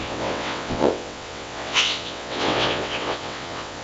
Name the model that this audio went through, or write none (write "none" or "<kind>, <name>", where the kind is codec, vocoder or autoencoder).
vocoder, WaveNeXt